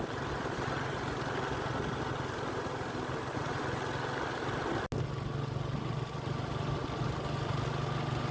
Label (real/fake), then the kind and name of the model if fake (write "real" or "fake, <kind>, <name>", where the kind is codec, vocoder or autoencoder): real